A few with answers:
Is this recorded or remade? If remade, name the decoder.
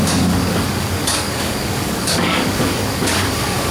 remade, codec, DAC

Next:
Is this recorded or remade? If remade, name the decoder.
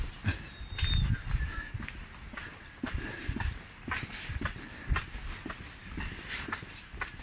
recorded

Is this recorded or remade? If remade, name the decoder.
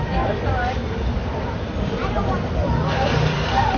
remade, vocoder, BigVGAN v2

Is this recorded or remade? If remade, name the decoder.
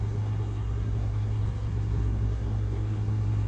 remade, codec, SNAC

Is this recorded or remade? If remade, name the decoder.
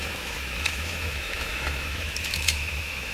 remade, autoencoder, DAC-VAE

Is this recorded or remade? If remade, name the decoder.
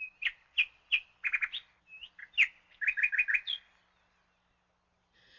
recorded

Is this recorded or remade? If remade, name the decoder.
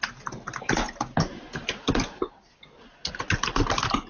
recorded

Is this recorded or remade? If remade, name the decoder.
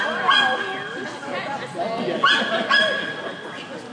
recorded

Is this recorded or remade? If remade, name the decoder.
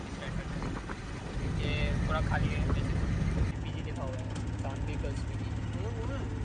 recorded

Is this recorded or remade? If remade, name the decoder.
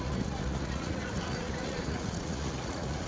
remade, vocoder, Vocos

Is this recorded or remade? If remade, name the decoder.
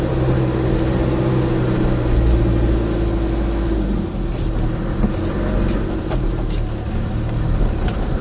recorded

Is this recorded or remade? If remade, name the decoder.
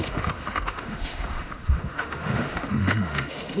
remade, autoencoder, DAC-VAE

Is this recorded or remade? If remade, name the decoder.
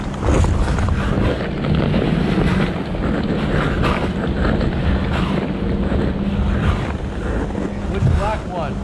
recorded